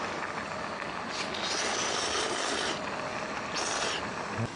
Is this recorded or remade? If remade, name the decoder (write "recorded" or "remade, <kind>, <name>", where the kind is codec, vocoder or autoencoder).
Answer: recorded